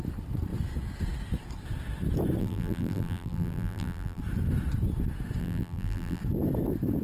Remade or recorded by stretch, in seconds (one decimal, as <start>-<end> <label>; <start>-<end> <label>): 0.0-2.4 recorded; 2.4-4.2 remade; 4.2-5.4 recorded; 5.4-6.2 remade; 6.2-7.0 recorded